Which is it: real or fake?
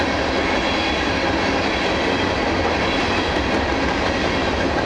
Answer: real